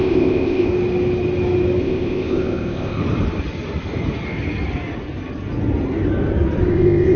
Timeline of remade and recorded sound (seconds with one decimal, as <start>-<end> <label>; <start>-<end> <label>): 0.0-0.7 remade; 0.7-1.8 recorded; 1.8-3.0 remade; 3.0-6.7 recorded; 6.7-7.2 remade